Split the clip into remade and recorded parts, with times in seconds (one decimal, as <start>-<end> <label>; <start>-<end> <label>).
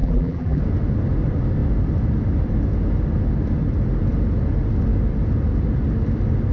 0.0-0.6 remade; 0.6-6.5 recorded